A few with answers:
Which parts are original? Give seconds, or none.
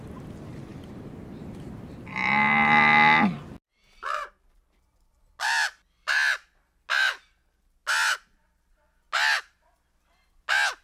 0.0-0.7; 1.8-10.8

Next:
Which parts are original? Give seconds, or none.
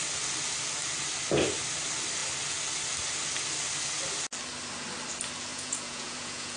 0.0-5.5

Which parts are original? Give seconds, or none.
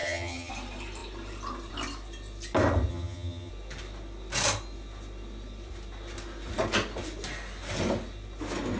0.5-2.9; 3.5-8.8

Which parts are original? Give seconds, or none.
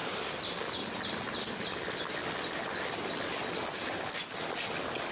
0.0-5.1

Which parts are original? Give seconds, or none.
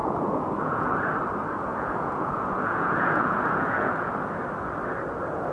1.1-1.7; 4.1-5.5